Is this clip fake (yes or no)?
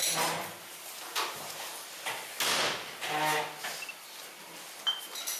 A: no